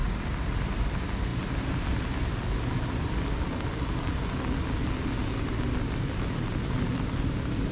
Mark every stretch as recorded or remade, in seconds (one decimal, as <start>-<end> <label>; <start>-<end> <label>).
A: 0.0-7.7 recorded